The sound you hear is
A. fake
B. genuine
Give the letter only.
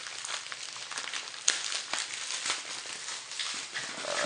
B